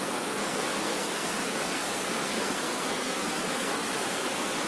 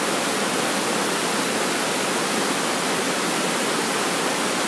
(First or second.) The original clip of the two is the second